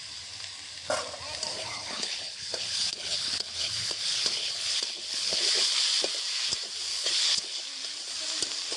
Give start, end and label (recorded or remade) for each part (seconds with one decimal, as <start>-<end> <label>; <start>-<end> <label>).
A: 0.0-1.5 recorded; 1.5-5.4 remade; 5.4-6.9 recorded; 6.9-7.6 remade; 7.6-8.8 recorded